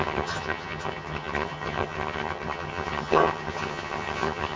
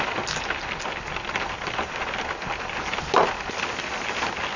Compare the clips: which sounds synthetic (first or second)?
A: first